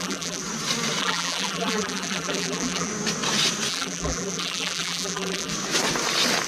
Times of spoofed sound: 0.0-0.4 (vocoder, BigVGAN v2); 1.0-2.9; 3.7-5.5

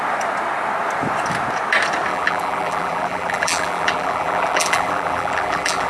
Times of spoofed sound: 2.1-5.9 (vocoder, BigVGAN v2)

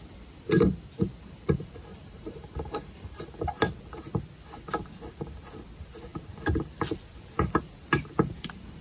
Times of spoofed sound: 1.9-3.3 (vocoder, BigVGAN v2)

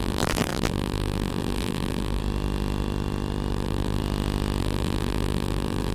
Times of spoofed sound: 0.0-2.2 (vocoder, BigVGAN v2); 3.5-4.0; 4.6-5.9

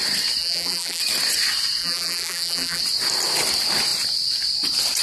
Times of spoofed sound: 0.4-1.0 (vocoder, BigVGAN v2); 1.8-2.8

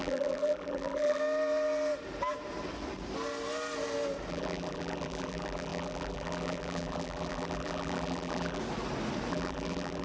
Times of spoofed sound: 0.0-1.2 (vocoder, BigVGAN v2); 4.3-8.6; 9.3-10.0

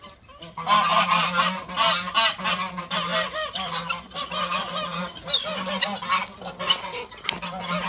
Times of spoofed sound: 0.9-1.4 (vocoder, BigVGAN v2)

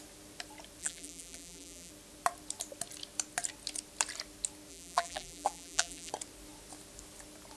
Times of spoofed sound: 0.8-1.9 (vocoder, BigVGAN v2); 4.7-6.1